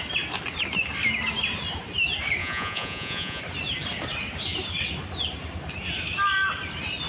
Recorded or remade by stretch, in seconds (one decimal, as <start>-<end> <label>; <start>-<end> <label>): 0.0-2.4 recorded; 2.4-3.4 remade; 3.4-7.1 recorded